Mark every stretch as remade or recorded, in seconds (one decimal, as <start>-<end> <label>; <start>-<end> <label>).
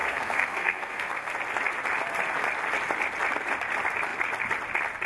0.0-1.3 remade; 1.3-5.1 recorded